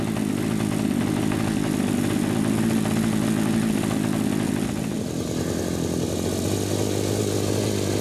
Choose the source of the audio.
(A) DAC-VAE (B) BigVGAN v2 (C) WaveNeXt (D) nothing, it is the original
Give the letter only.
D